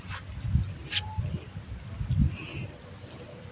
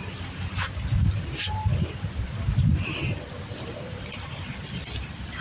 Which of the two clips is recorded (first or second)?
first